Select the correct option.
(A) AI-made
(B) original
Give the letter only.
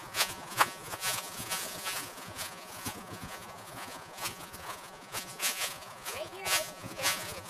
A